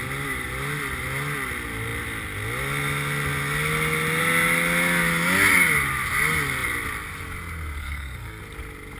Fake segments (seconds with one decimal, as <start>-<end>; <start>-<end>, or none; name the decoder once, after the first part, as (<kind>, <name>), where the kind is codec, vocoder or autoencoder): 7.8-8.4 (codec, SNAC)